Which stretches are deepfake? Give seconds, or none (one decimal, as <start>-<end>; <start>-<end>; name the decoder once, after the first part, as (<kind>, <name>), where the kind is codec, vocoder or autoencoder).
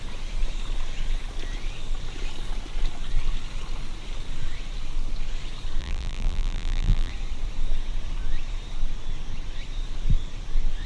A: 5.8-7.1 (vocoder, BigVGAN v2)